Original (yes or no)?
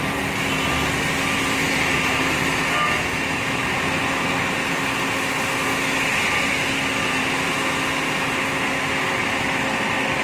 yes